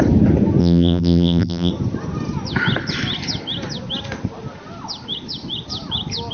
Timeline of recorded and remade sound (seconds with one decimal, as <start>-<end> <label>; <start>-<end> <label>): 0.0-0.6 recorded; 0.6-1.7 remade; 1.7-6.3 recorded